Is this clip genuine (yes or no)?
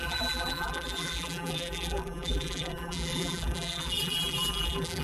no